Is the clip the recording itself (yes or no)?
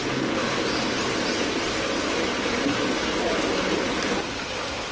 yes